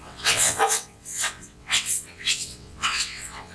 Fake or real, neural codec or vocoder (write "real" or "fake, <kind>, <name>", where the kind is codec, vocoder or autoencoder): fake, vocoder, WaveNeXt